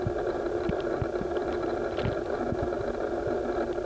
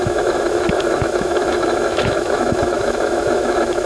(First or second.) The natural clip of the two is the first